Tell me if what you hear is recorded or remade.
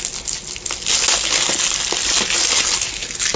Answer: recorded